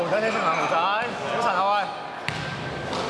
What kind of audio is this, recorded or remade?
recorded